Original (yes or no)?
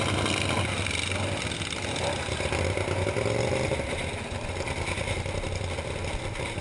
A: yes